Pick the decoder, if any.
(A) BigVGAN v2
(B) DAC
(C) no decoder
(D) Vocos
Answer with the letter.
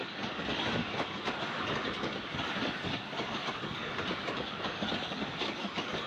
B